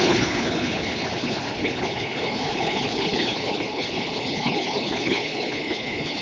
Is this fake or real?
fake